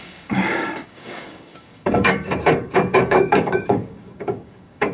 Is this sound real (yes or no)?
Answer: no